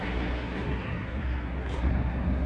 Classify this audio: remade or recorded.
remade